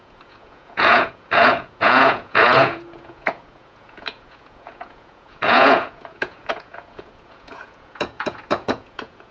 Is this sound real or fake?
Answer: fake